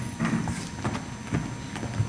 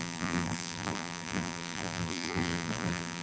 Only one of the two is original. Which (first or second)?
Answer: first